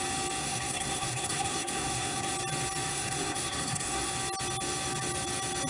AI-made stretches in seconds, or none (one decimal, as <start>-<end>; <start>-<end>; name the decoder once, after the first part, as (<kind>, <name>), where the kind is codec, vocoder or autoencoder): 0.4-2.3 (codec, SNAC); 2.9-4.1